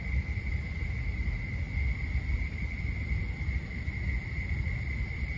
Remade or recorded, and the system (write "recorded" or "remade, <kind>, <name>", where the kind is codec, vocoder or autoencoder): recorded